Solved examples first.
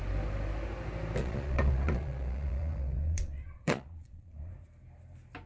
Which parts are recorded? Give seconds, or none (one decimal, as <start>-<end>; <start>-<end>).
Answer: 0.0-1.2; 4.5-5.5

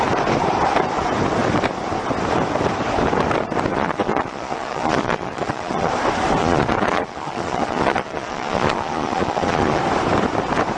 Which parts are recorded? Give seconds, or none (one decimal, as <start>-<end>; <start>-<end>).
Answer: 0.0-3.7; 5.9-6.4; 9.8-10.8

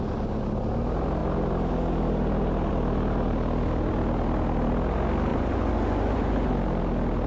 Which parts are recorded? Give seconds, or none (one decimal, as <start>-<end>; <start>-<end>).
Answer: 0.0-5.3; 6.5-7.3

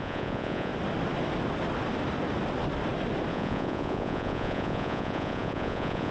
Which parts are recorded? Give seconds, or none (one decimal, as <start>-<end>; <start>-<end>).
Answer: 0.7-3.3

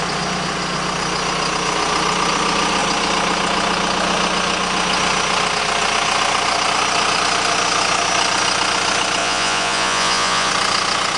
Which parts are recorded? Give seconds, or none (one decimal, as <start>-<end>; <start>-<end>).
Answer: 0.0-9.2; 10.5-11.2

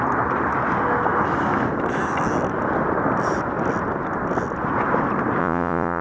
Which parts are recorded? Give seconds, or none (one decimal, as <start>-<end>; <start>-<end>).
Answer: 0.0-5.4